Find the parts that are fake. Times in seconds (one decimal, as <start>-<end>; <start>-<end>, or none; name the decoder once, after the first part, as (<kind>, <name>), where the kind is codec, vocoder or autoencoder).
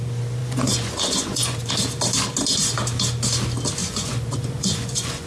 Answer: 0.4-1.7 (vocoder, Vocos); 3.8-5.3